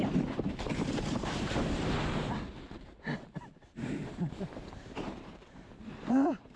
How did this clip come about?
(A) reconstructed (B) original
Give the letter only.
A